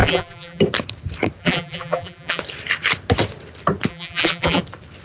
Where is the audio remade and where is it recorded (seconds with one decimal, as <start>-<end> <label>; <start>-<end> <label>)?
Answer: 0.0-0.6 remade; 0.6-1.4 recorded; 1.4-2.4 remade; 2.4-3.9 recorded; 3.9-4.6 remade; 4.6-5.0 recorded

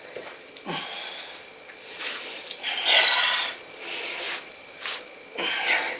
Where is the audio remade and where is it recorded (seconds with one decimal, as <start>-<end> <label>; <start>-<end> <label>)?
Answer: 0.0-6.0 recorded

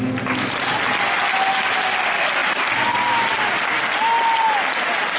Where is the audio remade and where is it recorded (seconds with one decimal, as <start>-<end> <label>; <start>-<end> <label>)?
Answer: 0.0-5.2 recorded

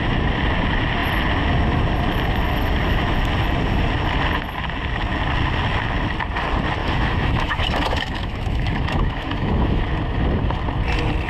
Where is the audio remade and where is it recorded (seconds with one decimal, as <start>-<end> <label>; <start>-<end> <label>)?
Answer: 0.0-6.8 recorded; 6.8-9.8 remade; 9.8-11.3 recorded

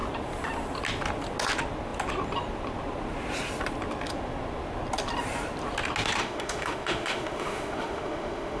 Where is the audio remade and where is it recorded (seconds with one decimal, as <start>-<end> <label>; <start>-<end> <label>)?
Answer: 0.0-6.2 recorded; 6.2-8.6 remade